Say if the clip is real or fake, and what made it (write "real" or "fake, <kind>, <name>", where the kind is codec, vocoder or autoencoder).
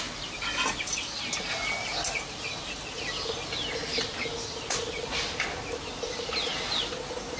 real